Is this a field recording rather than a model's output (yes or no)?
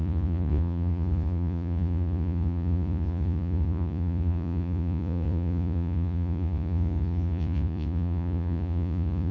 no